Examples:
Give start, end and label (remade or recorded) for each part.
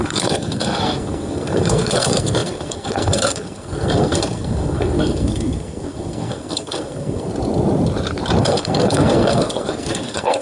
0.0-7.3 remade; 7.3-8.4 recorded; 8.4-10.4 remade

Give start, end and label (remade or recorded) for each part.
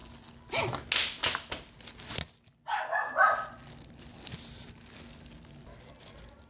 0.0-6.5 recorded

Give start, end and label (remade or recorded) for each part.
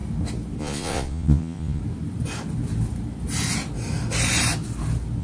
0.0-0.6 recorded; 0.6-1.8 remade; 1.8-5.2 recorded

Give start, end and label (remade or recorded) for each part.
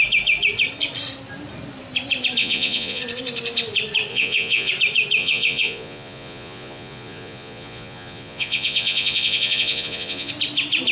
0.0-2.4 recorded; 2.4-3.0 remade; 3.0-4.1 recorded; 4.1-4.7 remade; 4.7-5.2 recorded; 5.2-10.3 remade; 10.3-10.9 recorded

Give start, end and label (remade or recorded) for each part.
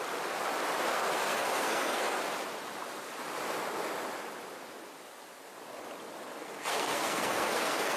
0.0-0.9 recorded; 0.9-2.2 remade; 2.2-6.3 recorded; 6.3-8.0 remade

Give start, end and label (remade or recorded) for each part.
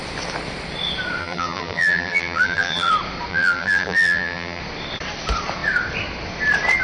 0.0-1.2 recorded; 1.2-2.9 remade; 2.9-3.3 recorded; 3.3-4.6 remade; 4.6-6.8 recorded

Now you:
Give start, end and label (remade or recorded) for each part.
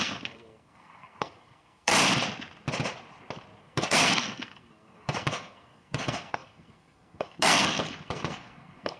0.0-1.9 remade; 1.9-3.6 recorded; 3.6-9.0 remade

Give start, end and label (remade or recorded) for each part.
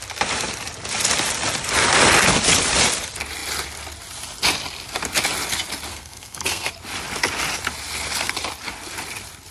0.0-5.9 recorded; 5.9-6.7 remade; 6.7-9.5 recorded